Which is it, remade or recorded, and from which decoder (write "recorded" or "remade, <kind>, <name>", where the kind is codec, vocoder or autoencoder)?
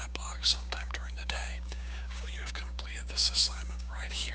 remade, codec, DAC